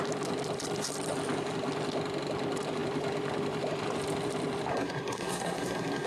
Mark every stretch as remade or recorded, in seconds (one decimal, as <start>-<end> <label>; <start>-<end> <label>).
0.0-4.7 recorded; 4.7-6.1 remade